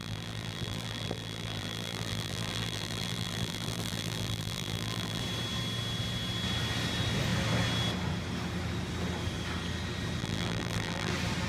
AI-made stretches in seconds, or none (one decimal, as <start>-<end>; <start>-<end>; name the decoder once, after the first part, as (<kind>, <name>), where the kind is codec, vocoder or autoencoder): 0.0-5.2 (vocoder, BigVGAN v2); 10.2-11.1